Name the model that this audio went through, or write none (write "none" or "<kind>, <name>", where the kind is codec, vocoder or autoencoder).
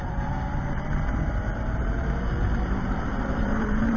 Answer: vocoder, BigVGAN v2